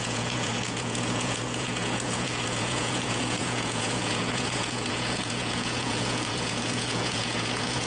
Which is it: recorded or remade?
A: remade